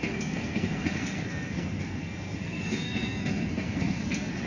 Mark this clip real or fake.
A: fake